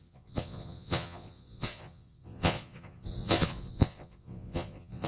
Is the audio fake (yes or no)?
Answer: yes